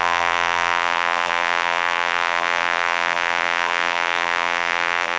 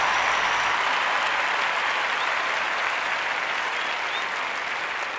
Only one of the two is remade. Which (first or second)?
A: first